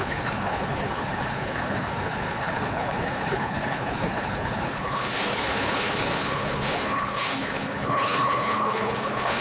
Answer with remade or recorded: remade